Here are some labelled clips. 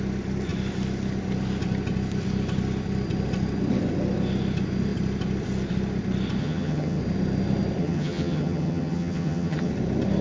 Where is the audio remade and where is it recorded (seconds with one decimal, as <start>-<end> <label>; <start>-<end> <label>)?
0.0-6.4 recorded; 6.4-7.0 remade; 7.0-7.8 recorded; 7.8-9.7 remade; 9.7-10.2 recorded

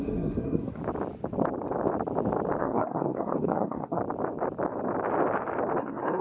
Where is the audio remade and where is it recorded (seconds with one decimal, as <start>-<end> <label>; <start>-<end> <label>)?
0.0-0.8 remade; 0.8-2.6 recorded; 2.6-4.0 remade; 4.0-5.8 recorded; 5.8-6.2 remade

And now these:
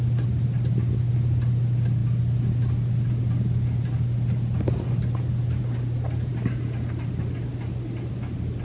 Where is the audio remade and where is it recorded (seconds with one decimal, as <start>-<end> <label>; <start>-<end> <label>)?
0.0-8.6 recorded

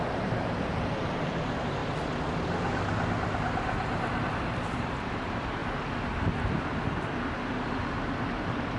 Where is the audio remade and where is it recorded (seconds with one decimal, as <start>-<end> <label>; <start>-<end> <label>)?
0.0-1.8 remade; 1.8-4.2 recorded; 4.2-5.6 remade; 5.6-7.5 recorded; 7.5-8.8 remade